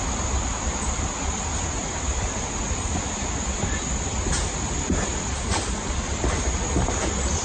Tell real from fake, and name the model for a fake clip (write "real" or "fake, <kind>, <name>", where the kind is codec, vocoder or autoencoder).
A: real